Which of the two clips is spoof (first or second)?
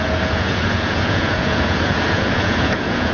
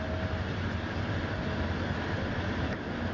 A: first